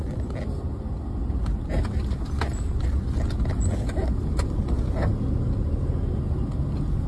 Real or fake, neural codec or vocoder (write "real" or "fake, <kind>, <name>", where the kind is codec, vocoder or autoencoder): real